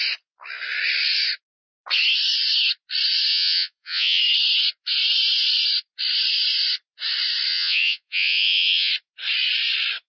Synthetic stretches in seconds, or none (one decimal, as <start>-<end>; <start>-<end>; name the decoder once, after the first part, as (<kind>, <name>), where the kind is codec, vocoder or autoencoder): 3.3-4.2 (vocoder, Vocos); 7.5-8.9